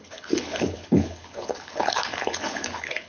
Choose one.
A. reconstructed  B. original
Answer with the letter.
A